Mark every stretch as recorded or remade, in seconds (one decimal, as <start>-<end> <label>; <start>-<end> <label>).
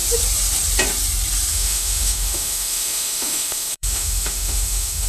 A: 0.0-1.5 recorded; 1.5-5.1 remade